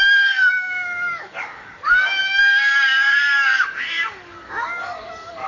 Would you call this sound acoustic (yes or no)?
no